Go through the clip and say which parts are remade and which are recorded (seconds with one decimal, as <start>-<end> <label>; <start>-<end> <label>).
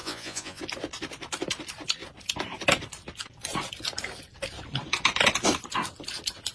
0.0-0.6 remade; 0.6-6.5 recorded